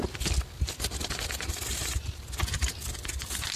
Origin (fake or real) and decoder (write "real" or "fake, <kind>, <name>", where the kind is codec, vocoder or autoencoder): real